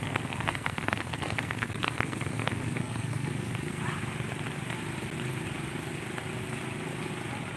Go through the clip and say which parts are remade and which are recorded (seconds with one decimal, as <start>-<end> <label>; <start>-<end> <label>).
0.0-3.8 remade; 3.8-7.6 recorded